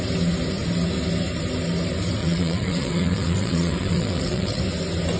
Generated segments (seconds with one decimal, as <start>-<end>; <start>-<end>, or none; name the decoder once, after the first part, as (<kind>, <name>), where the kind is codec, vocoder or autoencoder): 2.2-4.6 (vocoder, WaveNeXt)